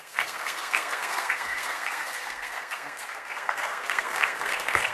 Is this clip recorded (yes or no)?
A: no